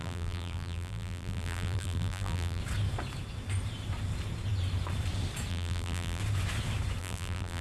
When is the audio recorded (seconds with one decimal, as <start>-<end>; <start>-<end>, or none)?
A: 2.6-5.5; 6.2-7.0